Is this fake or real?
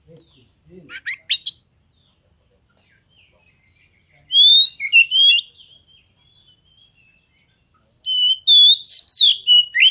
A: real